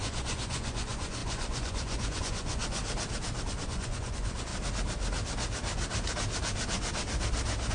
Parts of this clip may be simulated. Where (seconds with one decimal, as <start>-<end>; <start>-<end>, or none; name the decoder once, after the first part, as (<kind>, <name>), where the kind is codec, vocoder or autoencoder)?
0.0-2.8 (vocoder, Vocos); 3.5-4.5

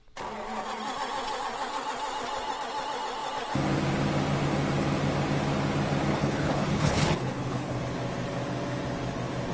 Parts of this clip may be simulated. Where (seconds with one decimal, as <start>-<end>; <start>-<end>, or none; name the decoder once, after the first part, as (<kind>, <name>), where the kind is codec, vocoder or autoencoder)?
6.1-7.8 (codec, HILCodec)